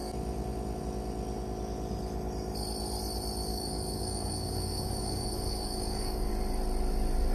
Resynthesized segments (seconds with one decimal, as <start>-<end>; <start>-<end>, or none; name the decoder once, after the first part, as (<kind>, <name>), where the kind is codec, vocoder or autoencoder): 3.5-6.3 (codec, DAC)